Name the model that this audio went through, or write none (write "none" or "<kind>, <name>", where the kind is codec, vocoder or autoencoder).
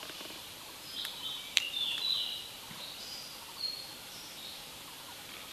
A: vocoder, BigVGAN v2